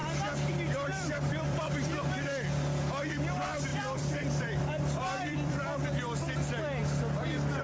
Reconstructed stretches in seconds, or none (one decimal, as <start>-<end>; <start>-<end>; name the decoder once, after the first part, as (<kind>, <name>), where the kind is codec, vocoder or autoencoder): 0.9-2.1 (vocoder, BigVGAN v2); 3.7-6.2